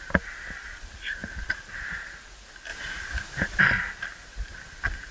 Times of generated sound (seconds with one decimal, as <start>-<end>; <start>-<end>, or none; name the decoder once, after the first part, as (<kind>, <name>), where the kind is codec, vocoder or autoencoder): 1.2-2.1 (vocoder, BigVGAN v2); 2.7-3.6; 4.5-5.1